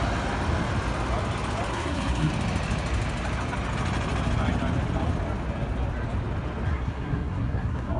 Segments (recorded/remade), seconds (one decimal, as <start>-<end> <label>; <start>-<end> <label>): 0.0-1.7 recorded; 1.7-2.3 remade; 2.3-6.7 recorded; 6.7-8.0 remade